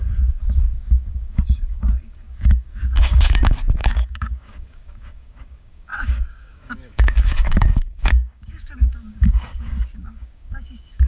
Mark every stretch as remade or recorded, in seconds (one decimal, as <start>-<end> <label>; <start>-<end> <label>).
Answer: 0.0-11.1 remade